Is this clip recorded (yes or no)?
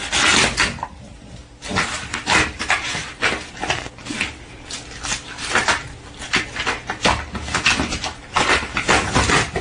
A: yes